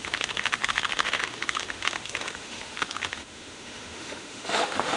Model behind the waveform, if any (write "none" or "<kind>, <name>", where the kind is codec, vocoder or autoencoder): autoencoder, DAC-VAE